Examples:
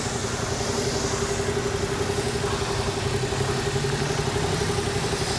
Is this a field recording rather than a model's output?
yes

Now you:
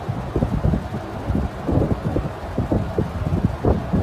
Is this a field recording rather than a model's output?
yes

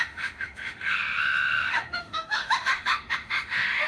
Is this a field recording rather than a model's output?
no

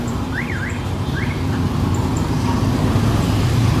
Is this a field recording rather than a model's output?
yes